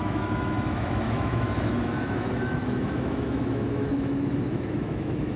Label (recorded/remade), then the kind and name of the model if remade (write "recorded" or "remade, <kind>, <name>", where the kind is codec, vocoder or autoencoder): remade, autoencoder, DAC-VAE